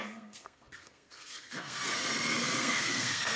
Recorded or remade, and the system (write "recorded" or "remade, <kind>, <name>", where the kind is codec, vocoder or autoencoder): remade, codec, SNAC